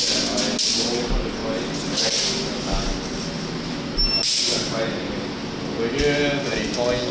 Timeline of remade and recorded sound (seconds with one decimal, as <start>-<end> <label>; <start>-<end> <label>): 0.0-7.1 recorded